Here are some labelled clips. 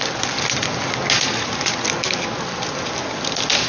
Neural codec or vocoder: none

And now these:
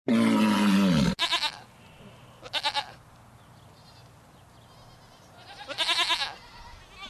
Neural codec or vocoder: none